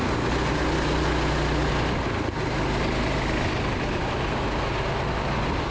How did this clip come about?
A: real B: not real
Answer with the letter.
A